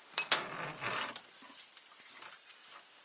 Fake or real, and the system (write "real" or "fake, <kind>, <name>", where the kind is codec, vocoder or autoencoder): real